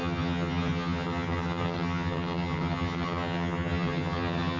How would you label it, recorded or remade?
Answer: remade